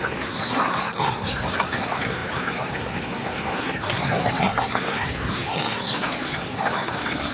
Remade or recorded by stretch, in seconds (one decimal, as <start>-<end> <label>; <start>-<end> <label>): 0.0-7.3 remade